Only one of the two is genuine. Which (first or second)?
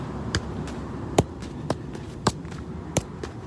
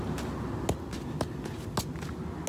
second